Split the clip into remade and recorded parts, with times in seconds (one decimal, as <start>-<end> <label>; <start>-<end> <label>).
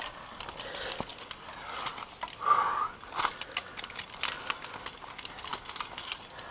0.0-6.5 recorded